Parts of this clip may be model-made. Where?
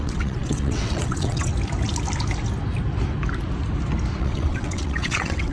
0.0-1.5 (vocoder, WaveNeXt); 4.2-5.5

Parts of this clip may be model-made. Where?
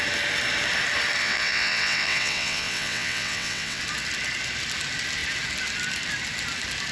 1.2-3.8 (vocoder, WaveNeXt)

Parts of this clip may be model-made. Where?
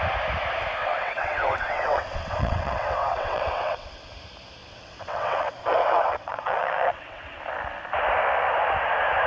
0.8-4.1 (vocoder, WaveNeXt); 4.6-7.4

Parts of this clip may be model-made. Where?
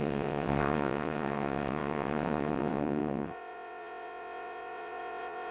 0.0-5.5 (vocoder, WaveNeXt)